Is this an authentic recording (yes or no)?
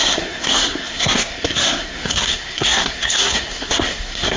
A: no